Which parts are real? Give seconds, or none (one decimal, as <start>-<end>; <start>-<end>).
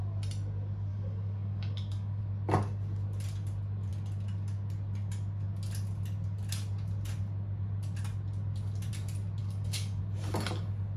0.0-0.9; 2.2-9.4; 10.0-11.0